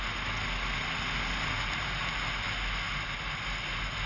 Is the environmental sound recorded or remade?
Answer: recorded